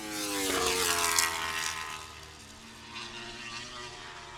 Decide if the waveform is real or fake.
real